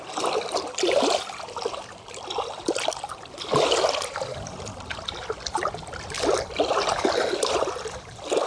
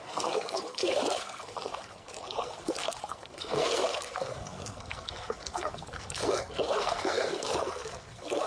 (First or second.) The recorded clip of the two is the first